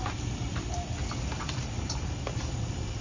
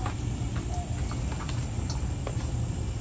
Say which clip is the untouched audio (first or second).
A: second